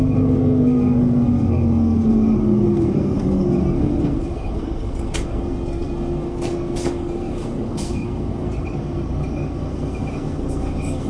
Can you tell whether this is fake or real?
fake